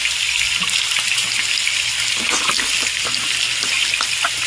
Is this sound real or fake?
real